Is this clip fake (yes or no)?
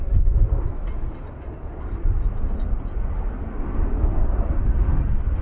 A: no